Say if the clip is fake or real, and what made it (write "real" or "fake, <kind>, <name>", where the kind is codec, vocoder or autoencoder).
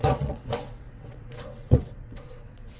fake, vocoder, WaveNeXt